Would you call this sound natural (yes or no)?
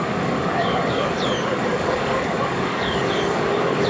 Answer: no